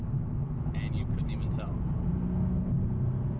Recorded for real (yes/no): yes